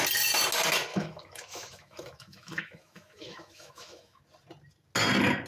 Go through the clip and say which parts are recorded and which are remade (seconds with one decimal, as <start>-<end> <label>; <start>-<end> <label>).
0.0-0.9 recorded; 0.9-4.2 remade; 4.2-5.5 recorded